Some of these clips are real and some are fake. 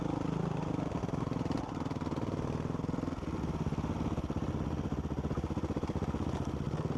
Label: real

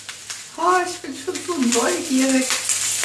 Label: real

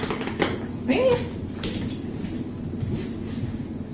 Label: real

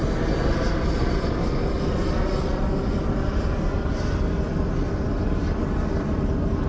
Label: real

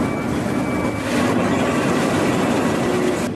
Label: real